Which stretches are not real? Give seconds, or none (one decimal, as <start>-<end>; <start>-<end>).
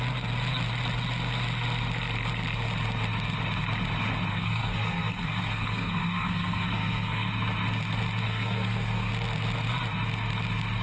4.3-7.3; 8.2-9.1